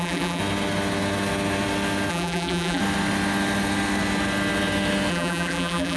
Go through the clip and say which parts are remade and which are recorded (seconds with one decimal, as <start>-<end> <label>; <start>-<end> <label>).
0.0-0.4 remade; 0.4-2.1 recorded; 2.1-2.8 remade; 2.8-5.1 recorded; 5.1-6.0 remade